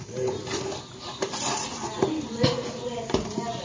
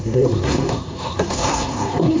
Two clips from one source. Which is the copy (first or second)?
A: second